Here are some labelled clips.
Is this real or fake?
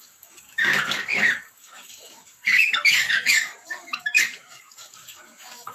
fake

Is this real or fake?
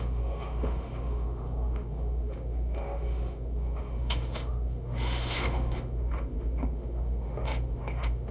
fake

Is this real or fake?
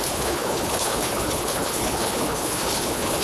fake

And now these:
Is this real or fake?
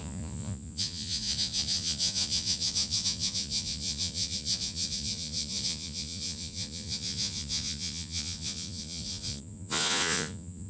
fake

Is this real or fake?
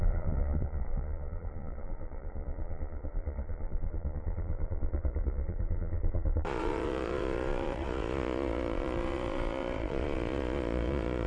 fake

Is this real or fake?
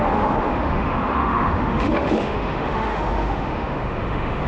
fake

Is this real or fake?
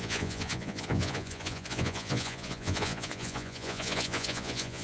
fake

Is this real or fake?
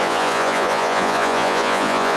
fake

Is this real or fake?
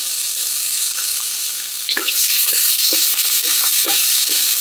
fake